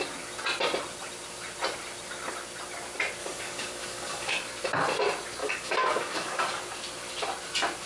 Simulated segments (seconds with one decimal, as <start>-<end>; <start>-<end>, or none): 3.2-4.3; 5.4-6.6